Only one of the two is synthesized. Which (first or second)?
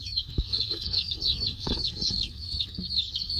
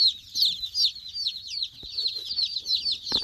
first